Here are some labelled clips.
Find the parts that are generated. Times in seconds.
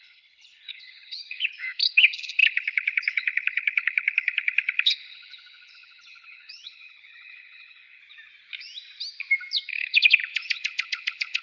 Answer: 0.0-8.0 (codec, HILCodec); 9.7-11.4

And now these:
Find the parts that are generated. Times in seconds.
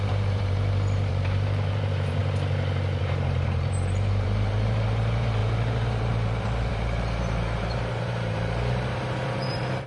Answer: 0.0-2.2 (vocoder, BigVGAN v2); 3.0-9.9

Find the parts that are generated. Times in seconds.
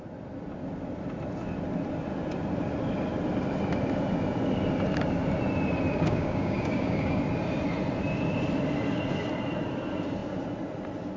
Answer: 5.9-7.2 (codec, DAC)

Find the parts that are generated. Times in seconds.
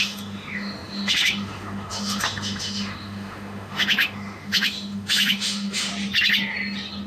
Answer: 0.0-5.9 (autoencoder, DAC-VAE)